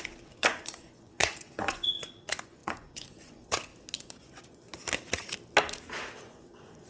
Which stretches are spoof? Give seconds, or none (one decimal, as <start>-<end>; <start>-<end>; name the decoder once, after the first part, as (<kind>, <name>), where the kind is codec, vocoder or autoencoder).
0.0-3.7 (vocoder, Vocos); 4.2-4.7; 6.2-6.9

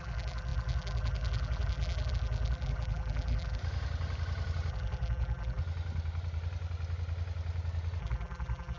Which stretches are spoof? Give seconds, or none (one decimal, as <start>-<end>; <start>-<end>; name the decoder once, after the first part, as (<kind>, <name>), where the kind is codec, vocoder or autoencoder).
0.0-3.6 (vocoder, BigVGAN v2); 4.7-5.6; 8.0-8.8

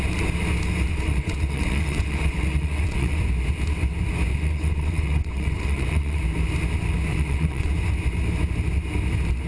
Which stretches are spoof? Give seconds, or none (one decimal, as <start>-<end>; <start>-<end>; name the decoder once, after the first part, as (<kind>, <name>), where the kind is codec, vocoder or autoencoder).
0.9-3.2 (vocoder, WaveNeXt); 4.3-6.2; 7.1-7.7